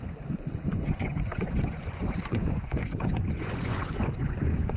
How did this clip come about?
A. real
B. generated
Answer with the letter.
B